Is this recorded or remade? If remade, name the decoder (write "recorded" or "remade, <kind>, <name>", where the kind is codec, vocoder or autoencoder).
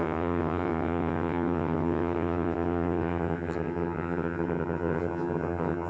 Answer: remade, vocoder, HiFi-GAN